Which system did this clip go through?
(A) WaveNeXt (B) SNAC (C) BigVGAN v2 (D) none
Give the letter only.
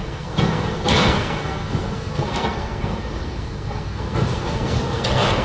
B